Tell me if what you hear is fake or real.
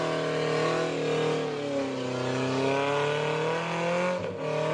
real